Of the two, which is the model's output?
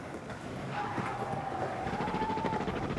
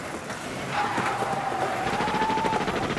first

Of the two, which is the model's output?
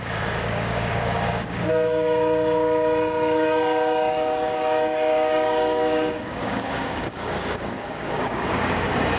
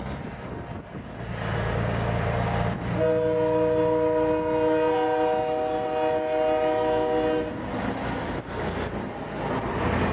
first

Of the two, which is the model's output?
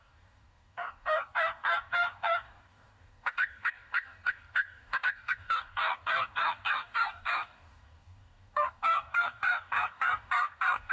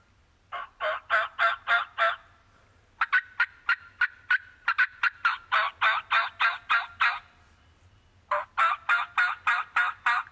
first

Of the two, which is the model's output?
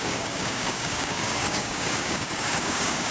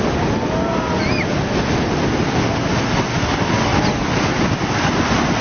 first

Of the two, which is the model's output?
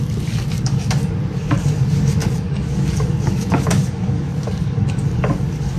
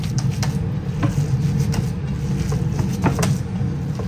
first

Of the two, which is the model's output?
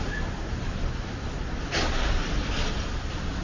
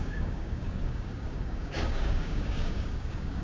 second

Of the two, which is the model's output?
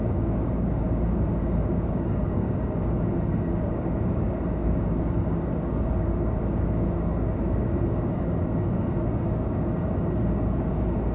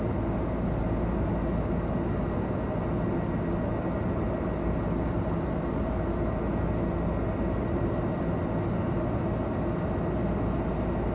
first